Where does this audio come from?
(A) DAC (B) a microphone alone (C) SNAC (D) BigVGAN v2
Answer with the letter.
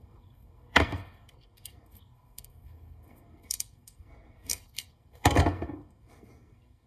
C